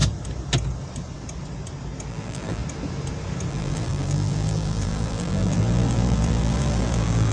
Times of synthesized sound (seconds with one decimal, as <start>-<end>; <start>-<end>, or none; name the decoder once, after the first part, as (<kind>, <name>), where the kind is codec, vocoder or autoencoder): 2.1-2.6 (vocoder, BigVGAN v2); 3.5-7.3

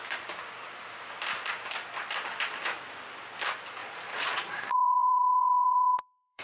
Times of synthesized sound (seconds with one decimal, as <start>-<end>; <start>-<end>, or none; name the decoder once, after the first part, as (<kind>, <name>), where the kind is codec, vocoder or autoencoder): 3.8-6.4 (vocoder, Vocos)